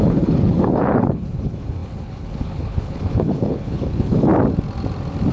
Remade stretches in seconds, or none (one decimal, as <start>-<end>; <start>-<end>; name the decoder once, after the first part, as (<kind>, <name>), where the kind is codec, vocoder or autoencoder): 0.0-4.3 (codec, HILCodec)